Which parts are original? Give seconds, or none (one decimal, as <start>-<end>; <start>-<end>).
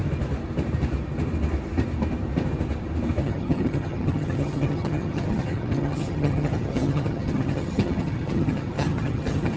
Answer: 0.0-3.2